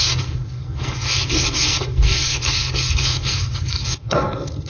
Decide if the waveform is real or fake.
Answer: fake